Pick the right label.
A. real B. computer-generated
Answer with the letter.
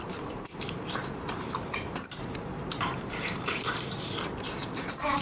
B